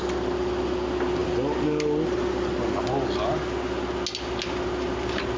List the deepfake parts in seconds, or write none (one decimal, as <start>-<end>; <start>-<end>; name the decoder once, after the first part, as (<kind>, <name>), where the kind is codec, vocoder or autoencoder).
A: none